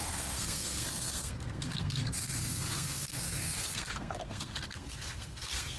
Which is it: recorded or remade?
remade